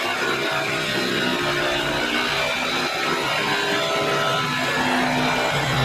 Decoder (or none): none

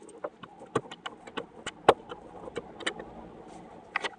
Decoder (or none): none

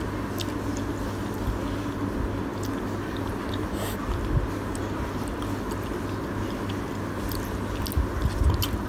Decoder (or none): none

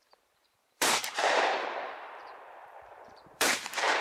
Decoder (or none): vocoder, BigVGAN v2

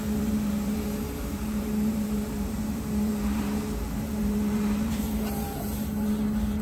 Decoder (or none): vocoder, BigVGAN v2